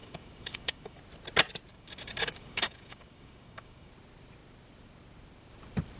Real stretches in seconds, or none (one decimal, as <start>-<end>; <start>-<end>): 1.0-1.7; 3.9-6.0